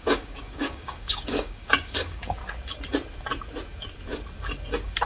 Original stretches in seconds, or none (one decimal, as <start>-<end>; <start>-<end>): 2.4-5.1